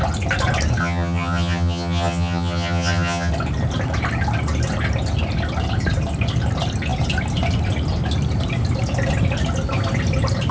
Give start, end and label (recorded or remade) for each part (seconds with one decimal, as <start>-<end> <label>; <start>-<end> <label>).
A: 0.0-0.8 recorded; 0.8-3.3 remade; 3.3-10.5 recorded